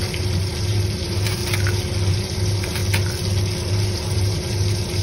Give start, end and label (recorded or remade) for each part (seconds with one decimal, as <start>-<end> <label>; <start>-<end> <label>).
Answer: 0.0-1.4 remade; 1.4-2.1 recorded; 2.1-2.8 remade; 2.8-3.7 recorded; 3.7-5.0 remade